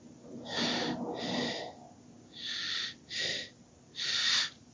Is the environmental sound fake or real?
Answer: real